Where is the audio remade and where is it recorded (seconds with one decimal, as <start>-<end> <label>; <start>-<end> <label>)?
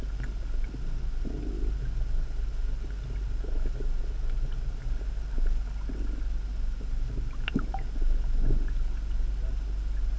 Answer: 0.0-10.2 recorded